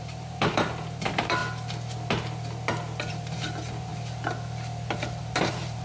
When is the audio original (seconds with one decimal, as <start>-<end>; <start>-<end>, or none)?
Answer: 1.4-3.1; 3.9-5.0